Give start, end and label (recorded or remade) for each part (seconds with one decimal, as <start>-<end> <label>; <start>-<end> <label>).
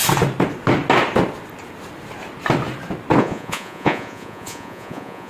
0.0-3.2 recorded; 3.2-5.3 remade